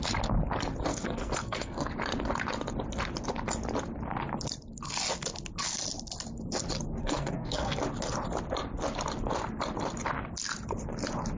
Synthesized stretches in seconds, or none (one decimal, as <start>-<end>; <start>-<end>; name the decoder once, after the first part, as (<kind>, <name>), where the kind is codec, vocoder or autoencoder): 0.9-1.9 (codec, SNAC); 7.0-7.8